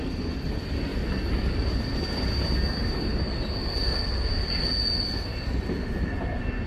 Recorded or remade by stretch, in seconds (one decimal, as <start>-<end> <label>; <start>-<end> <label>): 0.0-6.7 recorded